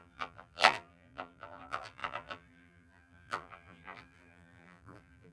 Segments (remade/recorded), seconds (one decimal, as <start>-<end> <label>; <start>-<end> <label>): 0.0-5.3 remade